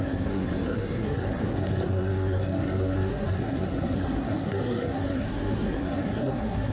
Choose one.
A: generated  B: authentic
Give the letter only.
A